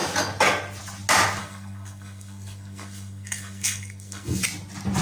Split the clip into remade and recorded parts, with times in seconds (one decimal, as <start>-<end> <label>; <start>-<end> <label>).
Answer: 0.0-1.4 recorded; 1.4-4.4 remade; 4.4-5.0 recorded